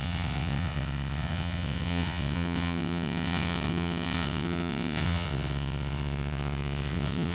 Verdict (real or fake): fake